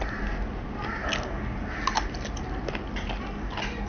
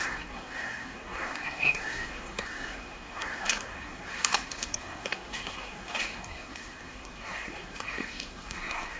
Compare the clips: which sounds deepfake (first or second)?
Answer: second